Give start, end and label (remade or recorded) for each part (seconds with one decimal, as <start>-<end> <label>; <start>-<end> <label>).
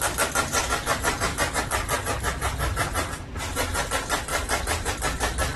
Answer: 0.0-0.5 recorded; 0.5-1.6 remade; 1.6-2.0 recorded; 2.0-3.8 remade; 3.8-4.3 recorded; 4.3-4.9 remade; 4.9-5.6 recorded